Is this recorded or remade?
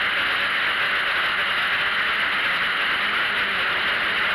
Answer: recorded